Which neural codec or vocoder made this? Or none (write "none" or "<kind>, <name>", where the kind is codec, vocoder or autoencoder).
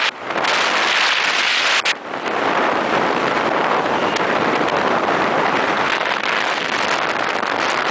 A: none